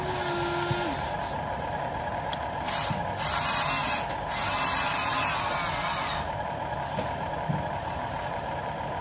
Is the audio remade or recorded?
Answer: recorded